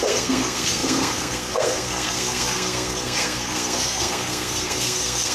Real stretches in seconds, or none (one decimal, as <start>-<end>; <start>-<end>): none